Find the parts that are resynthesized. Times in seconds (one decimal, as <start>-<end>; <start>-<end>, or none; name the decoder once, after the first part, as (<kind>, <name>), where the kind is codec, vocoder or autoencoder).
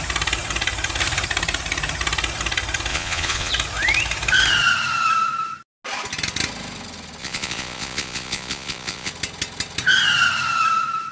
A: 2.9-3.5 (vocoder, Vocos); 7.2-9.1